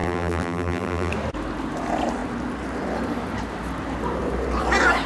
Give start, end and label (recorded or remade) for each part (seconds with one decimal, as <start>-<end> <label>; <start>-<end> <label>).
0.0-1.1 remade; 1.1-5.1 recorded